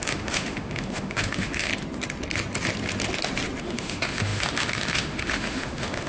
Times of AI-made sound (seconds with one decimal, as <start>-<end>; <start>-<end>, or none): 0.0-1.7; 3.6-6.1

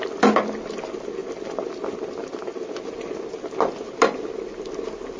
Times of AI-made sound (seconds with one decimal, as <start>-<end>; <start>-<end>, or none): none

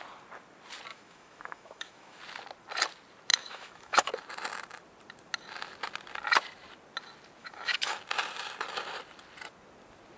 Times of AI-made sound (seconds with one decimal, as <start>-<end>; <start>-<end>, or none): 0.9-2.2; 3.3-4.1; 7.4-8.0

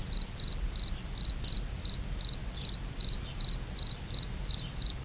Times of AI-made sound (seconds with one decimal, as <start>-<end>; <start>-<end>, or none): none

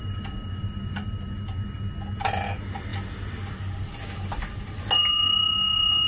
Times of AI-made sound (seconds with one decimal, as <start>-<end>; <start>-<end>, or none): none

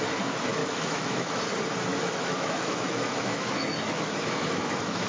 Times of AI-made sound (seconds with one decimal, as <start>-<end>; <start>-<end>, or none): 0.6-1.4; 1.9-5.1

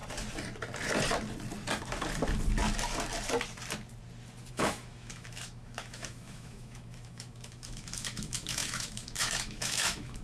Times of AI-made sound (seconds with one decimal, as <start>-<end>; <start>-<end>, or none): 4.5-10.2

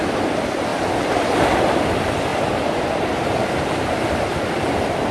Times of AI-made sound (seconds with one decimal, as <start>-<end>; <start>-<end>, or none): none